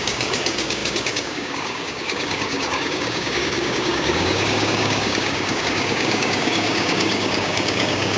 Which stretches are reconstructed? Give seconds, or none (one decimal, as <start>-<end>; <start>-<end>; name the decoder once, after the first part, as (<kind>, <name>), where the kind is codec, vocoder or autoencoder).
0.0-8.2 (codec, DAC)